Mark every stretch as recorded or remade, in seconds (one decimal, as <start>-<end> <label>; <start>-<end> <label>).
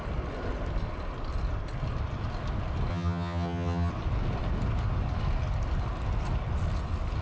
0.0-2.9 recorded; 2.9-3.9 remade; 3.9-7.2 recorded